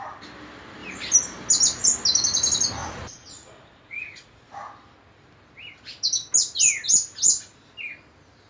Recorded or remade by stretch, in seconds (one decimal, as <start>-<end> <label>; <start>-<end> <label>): 0.0-2.8 recorded; 2.8-4.5 remade; 4.5-8.5 recorded